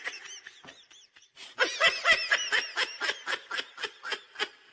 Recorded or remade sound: recorded